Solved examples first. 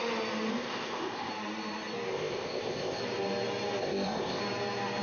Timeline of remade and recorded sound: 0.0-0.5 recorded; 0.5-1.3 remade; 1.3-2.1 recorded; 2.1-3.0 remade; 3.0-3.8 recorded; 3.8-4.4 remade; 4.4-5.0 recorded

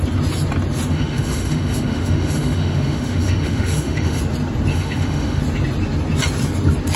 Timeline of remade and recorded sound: 0.0-0.9 recorded; 0.9-4.2 remade; 4.2-4.7 recorded; 4.7-5.4 remade; 5.4-7.0 recorded

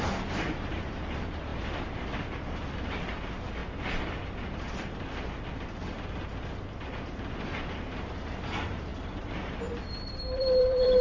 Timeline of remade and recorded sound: 0.0-1.5 remade; 1.5-2.2 recorded; 2.2-3.6 remade; 3.6-4.7 recorded; 4.7-6.3 remade; 6.3-6.8 recorded; 6.8-11.0 remade

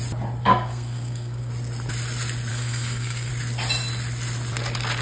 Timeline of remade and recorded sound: 0.0-0.5 recorded; 0.5-1.5 remade; 1.5-2.5 recorded; 2.5-3.3 remade; 3.3-5.0 recorded

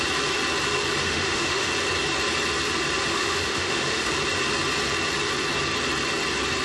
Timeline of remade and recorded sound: 0.0-1.0 recorded; 1.0-1.7 remade; 1.7-3.1 recorded; 3.1-4.1 remade; 4.1-6.6 recorded